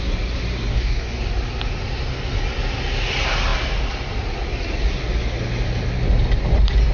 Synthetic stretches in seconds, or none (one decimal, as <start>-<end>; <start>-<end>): 0.7-1.2